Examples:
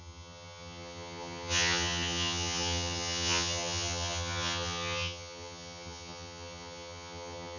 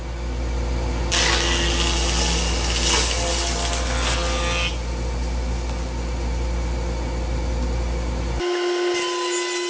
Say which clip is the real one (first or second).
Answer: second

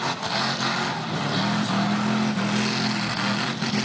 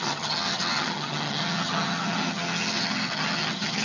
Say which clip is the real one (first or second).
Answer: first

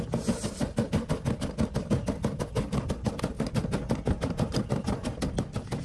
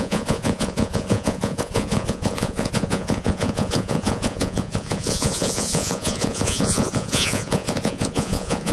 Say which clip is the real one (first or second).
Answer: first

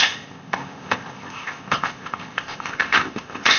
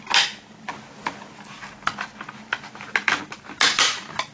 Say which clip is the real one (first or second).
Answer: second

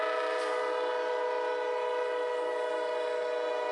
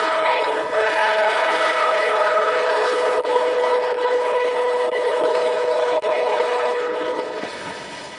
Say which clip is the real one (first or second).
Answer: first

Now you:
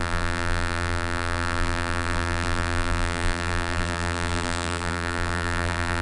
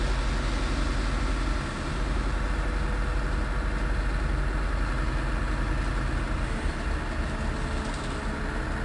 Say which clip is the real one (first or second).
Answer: second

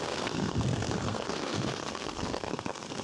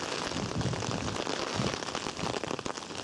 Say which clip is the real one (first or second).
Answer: second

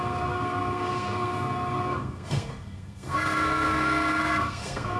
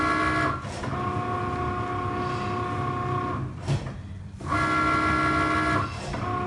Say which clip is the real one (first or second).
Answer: second